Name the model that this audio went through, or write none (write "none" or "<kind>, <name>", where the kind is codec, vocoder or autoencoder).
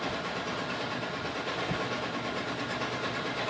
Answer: none